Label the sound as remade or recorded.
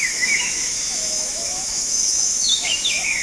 remade